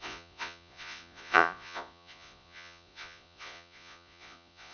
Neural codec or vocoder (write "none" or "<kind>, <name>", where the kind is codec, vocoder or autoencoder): vocoder, Vocos